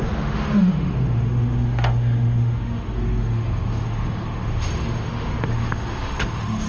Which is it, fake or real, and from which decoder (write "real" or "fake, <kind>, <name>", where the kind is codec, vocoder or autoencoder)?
fake, autoencoder, DAC-VAE